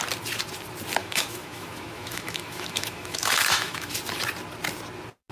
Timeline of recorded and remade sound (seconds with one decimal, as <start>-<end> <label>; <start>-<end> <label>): 0.0-1.0 recorded; 1.0-3.9 remade; 3.9-5.3 recorded